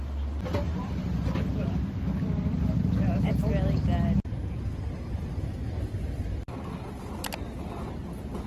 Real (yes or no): yes